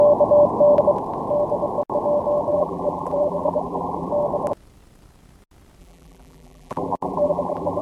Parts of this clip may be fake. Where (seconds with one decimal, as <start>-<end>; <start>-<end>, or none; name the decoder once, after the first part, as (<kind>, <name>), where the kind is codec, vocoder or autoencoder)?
2.5-4.1 (vocoder, BigVGAN v2); 5.8-7.8